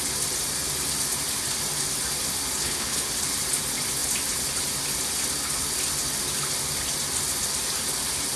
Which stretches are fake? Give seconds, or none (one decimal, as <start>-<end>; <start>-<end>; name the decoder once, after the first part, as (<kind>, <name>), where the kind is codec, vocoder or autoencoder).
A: 2.6-3.1 (codec, HILCodec)